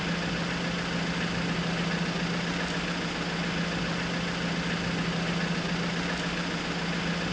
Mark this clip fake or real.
real